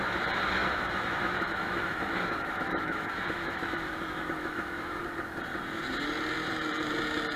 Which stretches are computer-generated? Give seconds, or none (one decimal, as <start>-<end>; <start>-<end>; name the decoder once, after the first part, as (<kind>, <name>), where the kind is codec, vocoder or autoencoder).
0.6-5.0 (autoencoder, DAC-VAE)